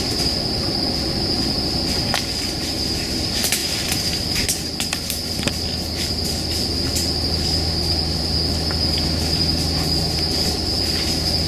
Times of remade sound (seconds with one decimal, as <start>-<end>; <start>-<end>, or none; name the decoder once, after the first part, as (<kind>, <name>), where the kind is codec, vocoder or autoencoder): none